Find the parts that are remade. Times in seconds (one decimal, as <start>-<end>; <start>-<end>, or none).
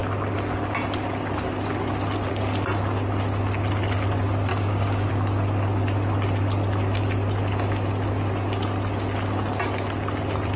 4.5-5.1